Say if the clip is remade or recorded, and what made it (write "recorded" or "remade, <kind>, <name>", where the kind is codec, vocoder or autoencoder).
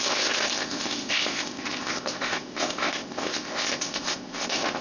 remade, codec, ZipCodec